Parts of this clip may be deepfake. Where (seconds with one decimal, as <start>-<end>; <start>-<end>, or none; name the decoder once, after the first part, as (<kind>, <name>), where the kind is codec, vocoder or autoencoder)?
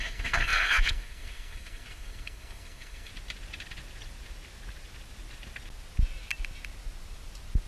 0.0-3.1 (codec, SNAC)